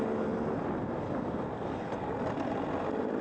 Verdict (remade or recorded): recorded